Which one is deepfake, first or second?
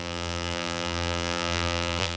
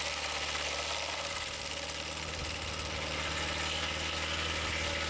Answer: first